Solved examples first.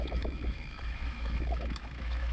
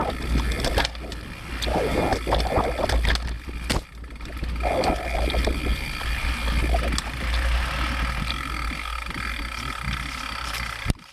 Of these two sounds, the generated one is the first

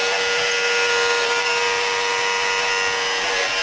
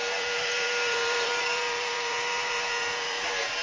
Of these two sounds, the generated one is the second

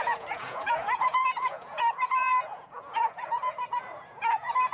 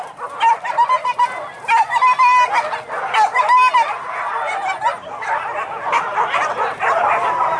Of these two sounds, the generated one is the first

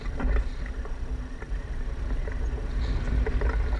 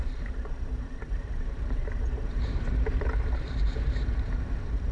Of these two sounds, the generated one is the second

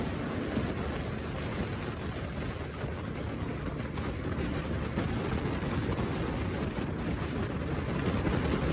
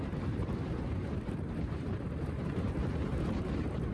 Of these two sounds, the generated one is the second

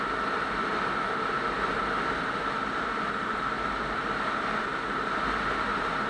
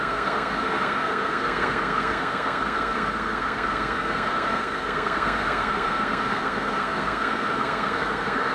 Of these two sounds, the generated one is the second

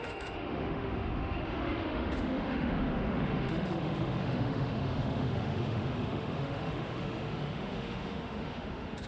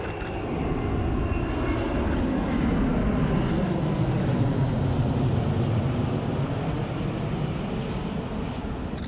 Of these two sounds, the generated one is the first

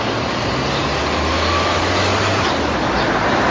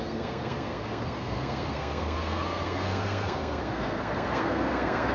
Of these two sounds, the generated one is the second